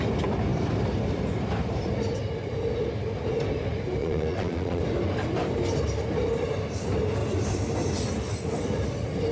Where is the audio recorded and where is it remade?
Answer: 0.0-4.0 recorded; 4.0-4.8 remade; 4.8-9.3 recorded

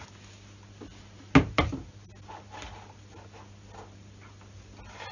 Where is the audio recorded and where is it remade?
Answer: 0.0-5.1 recorded

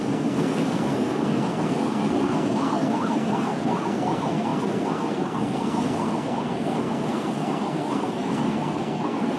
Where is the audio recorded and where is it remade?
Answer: 0.0-9.4 remade